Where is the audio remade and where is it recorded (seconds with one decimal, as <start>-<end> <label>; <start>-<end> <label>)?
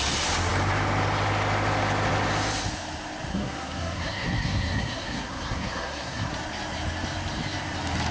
0.0-3.3 recorded; 3.3-6.3 remade; 6.3-8.1 recorded